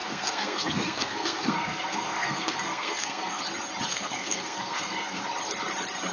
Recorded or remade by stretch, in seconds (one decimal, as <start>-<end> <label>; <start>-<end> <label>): 0.0-3.4 remade; 3.4-3.9 recorded; 3.9-5.2 remade; 5.2-6.1 recorded